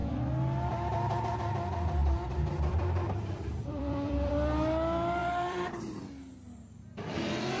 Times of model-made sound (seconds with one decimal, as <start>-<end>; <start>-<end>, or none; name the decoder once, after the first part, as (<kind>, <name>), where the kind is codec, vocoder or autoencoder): 2.0-4.3 (vocoder, BigVGAN v2); 5.2-6.0